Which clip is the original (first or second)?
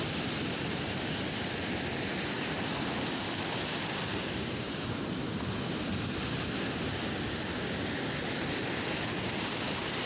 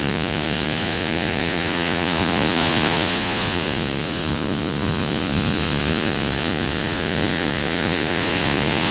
first